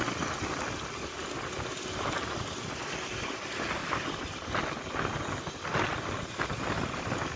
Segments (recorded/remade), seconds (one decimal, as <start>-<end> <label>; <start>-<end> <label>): 0.0-7.4 recorded